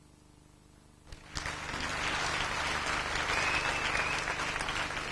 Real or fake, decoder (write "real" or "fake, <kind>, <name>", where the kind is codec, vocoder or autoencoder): real